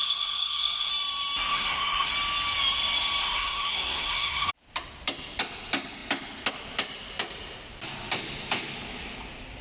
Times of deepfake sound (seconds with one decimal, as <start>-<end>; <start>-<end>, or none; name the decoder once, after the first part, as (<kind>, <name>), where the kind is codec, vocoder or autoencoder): 0.0-0.9 (codec, SNAC); 1.5-2.1; 3.2-4.5